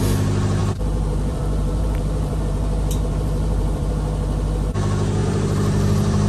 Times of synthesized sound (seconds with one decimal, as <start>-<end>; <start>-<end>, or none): 0.6-3.9; 5.2-6.3